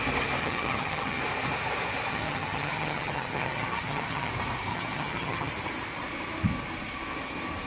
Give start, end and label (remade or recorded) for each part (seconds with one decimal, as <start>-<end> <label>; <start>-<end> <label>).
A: 0.0-0.4 recorded; 0.4-1.2 remade; 1.2-2.1 recorded; 2.1-4.3 remade; 4.3-4.7 recorded; 4.7-5.5 remade; 5.5-7.7 recorded